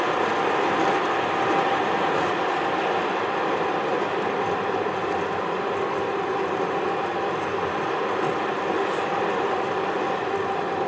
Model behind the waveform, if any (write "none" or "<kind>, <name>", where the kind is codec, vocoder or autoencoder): none